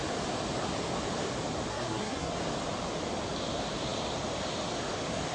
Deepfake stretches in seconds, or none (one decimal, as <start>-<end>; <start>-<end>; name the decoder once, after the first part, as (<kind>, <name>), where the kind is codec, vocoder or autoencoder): 1.7-2.3 (codec, SNAC)